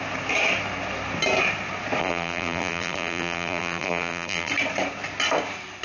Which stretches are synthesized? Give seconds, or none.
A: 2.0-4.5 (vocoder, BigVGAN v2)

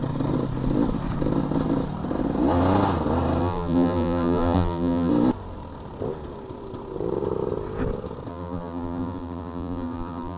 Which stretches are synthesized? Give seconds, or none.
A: 3.4-5.1 (vocoder, BigVGAN v2); 8.3-10.4

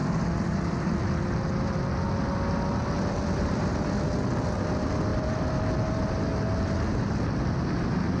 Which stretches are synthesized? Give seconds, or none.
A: 0.0-1.2 (vocoder, BigVGAN v2); 2.8-3.7; 5.1-6.3

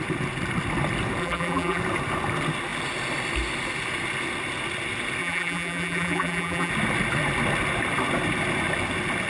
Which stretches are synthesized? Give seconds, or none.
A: 1.2-1.8 (vocoder, BigVGAN v2); 5.2-6.7

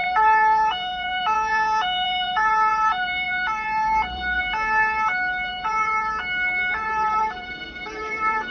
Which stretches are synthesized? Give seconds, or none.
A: 0.0-4.4 (vocoder, BigVGAN v2); 5.5-6.1; 6.8-8.5